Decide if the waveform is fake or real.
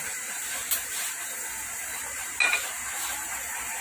fake